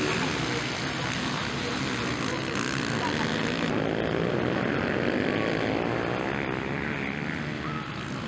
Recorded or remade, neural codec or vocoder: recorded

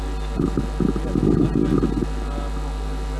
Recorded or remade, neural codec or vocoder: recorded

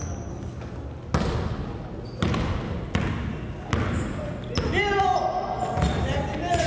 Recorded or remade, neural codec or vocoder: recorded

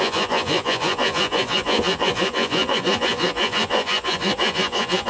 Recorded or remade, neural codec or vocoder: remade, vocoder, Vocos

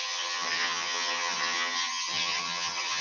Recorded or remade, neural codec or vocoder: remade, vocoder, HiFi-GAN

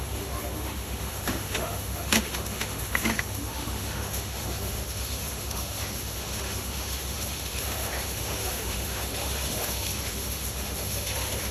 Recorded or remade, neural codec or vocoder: remade, autoencoder, DAC-VAE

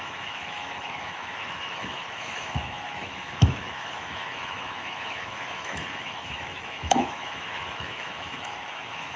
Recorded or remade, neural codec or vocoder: remade, autoencoder, DAC-VAE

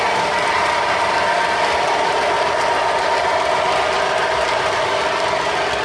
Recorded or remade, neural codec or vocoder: recorded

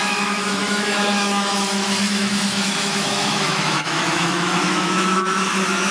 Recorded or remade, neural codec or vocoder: remade, autoencoder, DAC-VAE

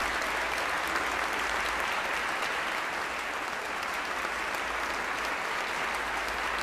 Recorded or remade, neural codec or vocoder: recorded